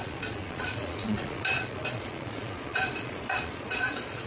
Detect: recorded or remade remade